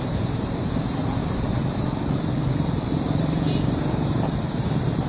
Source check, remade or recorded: remade